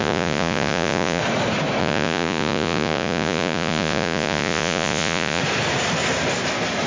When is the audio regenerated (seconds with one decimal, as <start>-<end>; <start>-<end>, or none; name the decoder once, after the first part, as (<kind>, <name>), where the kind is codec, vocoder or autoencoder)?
0.0-1.2 (vocoder, Vocos); 1.8-5.4

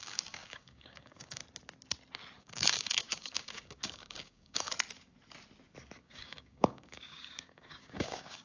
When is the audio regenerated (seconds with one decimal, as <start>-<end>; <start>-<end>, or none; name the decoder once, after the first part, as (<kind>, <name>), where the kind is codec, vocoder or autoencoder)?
0.0-1.4 (codec, DAC); 2.4-4.7; 6.0-8.4

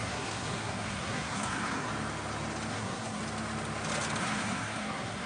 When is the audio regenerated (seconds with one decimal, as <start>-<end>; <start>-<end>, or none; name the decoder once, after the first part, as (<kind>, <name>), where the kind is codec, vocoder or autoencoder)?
0.0-1.9 (codec, SNAC); 2.7-3.2; 4.2-5.3